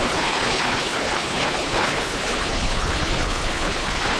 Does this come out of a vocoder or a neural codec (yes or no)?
yes